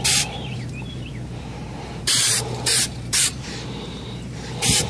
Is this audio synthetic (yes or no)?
yes